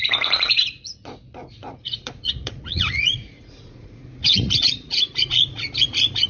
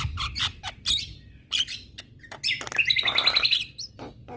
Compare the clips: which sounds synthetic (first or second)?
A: first